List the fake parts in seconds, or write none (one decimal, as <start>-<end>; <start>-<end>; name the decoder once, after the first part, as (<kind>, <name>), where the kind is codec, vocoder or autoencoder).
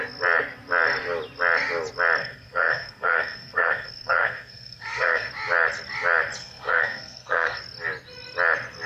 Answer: 2.2-5.3 (codec, SNAC); 6.4-7.6